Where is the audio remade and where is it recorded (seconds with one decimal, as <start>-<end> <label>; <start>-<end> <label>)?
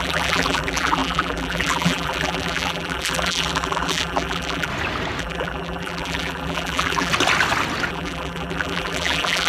0.0-4.7 remade; 4.7-5.2 recorded; 5.2-7.1 remade; 7.1-7.9 recorded; 7.9-9.5 remade